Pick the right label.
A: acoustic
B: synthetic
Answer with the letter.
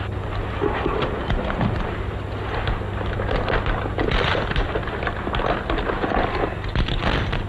A